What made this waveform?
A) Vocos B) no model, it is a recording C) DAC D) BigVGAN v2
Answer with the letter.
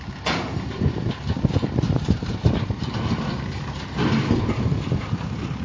D